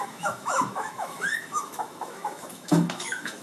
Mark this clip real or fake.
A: fake